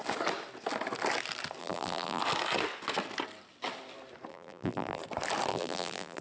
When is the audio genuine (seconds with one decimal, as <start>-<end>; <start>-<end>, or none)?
0.0-1.6; 2.2-4.3; 5.0-5.5